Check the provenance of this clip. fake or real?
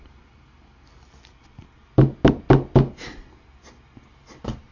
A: real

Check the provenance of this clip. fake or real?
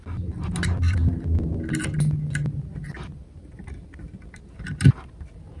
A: real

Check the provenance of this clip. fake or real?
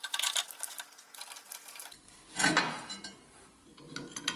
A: real